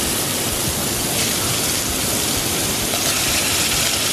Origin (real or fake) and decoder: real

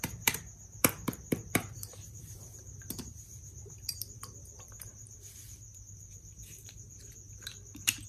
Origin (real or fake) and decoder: fake, vocoder, BigVGAN v2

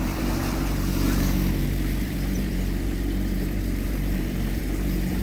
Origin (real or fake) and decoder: fake, vocoder, BigVGAN v2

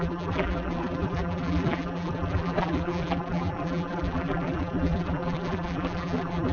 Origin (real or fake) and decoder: fake, vocoder, BigVGAN v2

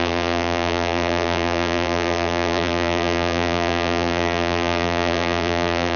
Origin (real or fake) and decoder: fake, vocoder, BigVGAN v2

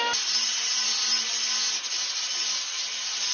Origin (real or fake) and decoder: real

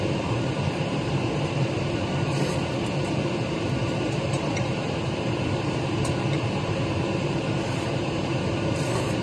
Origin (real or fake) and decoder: fake, vocoder, BigVGAN v2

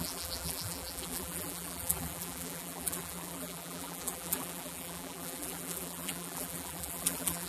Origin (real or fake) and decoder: fake, vocoder, BigVGAN v2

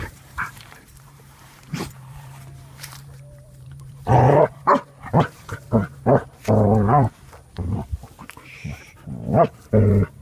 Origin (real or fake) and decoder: fake, vocoder, BigVGAN v2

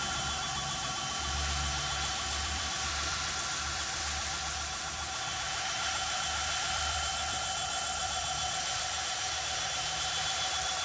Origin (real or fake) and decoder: fake, vocoder, BigVGAN v2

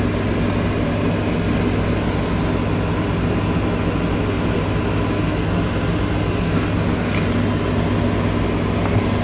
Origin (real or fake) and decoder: real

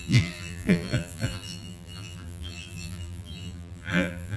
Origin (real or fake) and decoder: fake, vocoder, BigVGAN v2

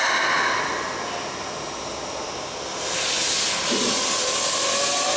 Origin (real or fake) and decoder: real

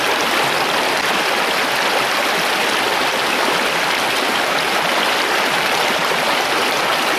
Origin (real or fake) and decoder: real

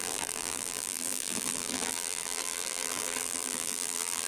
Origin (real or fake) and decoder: fake, vocoder, BigVGAN v2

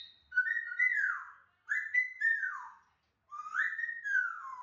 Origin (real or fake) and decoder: real